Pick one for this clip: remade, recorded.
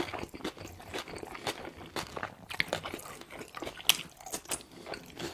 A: recorded